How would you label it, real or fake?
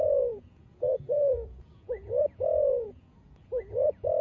fake